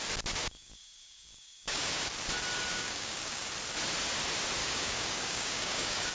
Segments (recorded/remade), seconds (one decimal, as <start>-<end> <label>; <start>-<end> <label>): 0.0-0.4 recorded; 0.4-2.1 remade; 2.1-2.7 recorded; 2.7-3.4 remade; 3.4-4.6 recorded; 4.6-6.1 remade